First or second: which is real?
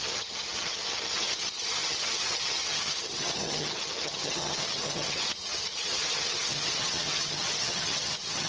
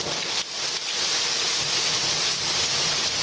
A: second